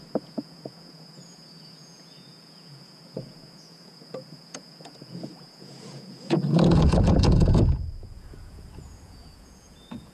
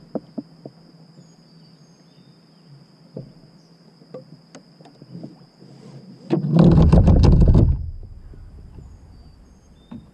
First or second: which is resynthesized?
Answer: first